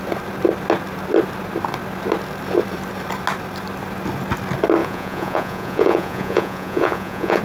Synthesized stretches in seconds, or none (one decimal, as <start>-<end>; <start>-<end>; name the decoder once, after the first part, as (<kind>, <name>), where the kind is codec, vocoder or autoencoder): 4.8-7.4 (vocoder, Vocos)